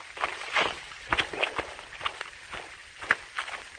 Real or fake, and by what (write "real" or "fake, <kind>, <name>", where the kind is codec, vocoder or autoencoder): real